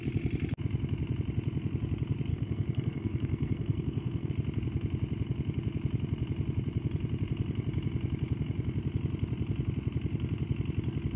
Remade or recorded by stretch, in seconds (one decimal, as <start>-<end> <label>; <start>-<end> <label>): 0.0-2.3 recorded; 2.3-4.3 remade; 4.3-11.2 recorded